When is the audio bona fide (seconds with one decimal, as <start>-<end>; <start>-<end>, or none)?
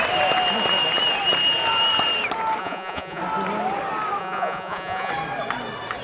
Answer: 0.0-2.6; 3.2-4.2; 5.1-6.0